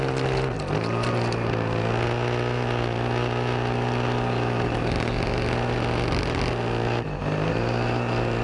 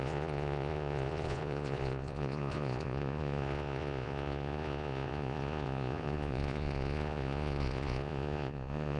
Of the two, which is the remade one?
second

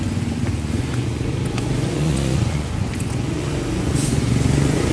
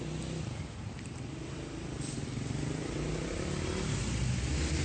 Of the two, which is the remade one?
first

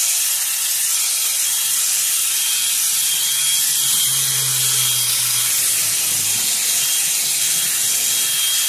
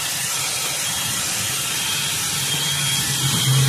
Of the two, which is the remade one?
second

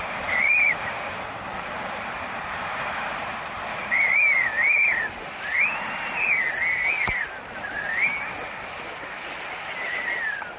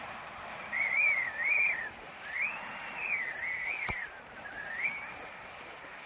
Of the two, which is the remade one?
second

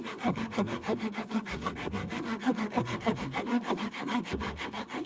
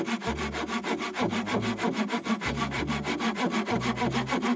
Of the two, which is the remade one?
first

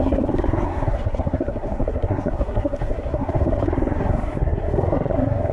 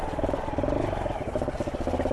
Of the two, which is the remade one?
first